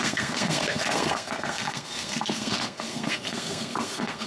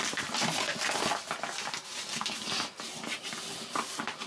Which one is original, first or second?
second